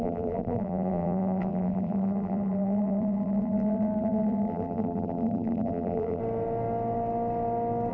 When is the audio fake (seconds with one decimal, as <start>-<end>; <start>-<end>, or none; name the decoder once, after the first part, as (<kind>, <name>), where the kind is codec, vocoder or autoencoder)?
0.0-6.2 (vocoder, BigVGAN v2)